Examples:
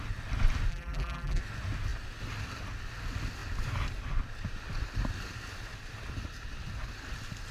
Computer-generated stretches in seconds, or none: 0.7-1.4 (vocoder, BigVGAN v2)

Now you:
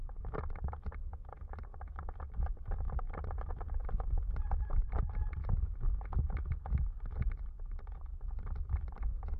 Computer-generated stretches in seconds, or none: 0.0-3.8 (vocoder, BigVGAN v2); 4.6-5.4; 7.2-9.4

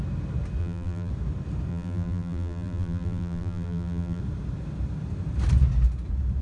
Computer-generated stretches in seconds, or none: 0.6-1.1 (vocoder, BigVGAN v2); 1.7-4.2

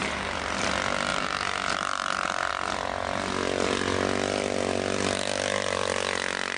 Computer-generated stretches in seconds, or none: 0.0-0.7 (vocoder, BigVGAN v2); 1.1-2.5